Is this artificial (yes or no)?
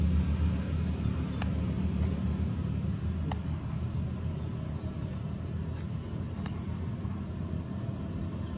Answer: no